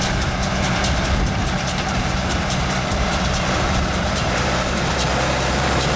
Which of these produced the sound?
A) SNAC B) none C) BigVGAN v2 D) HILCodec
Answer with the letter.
C